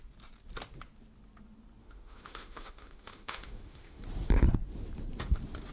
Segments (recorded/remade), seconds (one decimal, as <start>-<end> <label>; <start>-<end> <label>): 0.0-1.8 recorded; 1.8-4.0 remade; 4.0-5.7 recorded